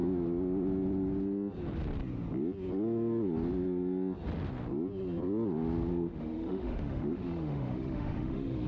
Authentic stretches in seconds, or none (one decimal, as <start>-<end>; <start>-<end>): 0.0-5.9